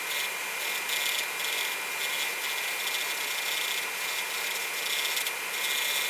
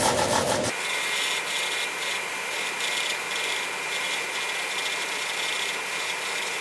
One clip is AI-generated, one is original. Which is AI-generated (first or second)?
second